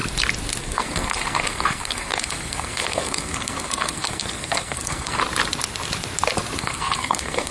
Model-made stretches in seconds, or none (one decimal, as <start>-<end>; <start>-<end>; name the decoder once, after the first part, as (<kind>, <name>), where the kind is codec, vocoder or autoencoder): 0.6-5.2 (codec, SNAC); 6.6-7.5